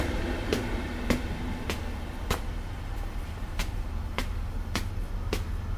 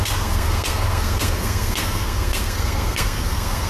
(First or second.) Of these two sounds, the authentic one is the first